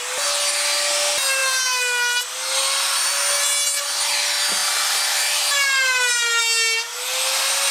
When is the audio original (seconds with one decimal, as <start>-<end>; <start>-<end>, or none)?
0.0-7.7